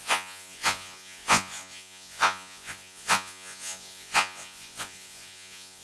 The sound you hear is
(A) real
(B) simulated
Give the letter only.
B